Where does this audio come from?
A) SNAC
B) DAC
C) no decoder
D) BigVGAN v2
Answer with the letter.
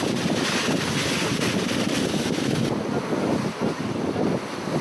C